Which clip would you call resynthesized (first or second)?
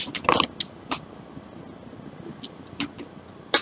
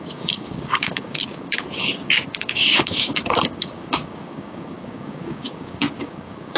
second